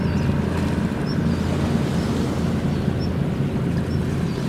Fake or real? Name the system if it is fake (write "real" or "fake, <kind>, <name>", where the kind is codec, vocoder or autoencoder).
real